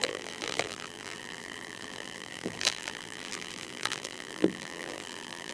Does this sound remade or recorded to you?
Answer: remade